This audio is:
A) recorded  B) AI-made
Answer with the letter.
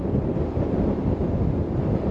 A